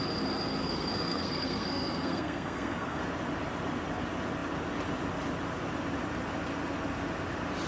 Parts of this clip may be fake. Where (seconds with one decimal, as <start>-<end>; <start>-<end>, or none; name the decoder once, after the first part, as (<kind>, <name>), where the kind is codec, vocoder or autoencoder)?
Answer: 0.6-3.0 (codec, SNAC)